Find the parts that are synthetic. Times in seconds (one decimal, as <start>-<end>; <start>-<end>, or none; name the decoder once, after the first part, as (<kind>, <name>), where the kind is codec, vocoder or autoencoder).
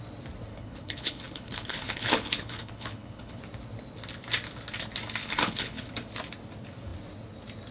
0.5-3.4 (codec, HILCodec); 5.2-5.9